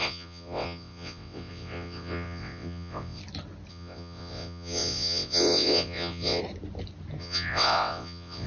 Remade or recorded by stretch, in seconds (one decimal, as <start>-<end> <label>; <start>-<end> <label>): 0.0-3.2 remade; 3.2-3.7 recorded; 3.7-6.4 remade; 6.4-7.2 recorded; 7.2-8.5 remade